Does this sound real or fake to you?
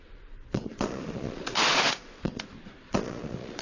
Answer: fake